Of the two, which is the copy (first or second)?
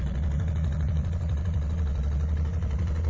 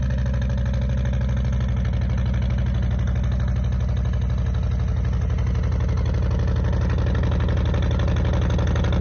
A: first